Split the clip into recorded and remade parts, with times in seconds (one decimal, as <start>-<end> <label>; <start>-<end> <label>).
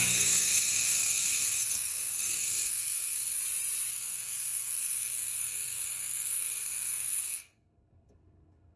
0.0-3.4 remade; 3.4-3.9 recorded; 3.9-8.8 remade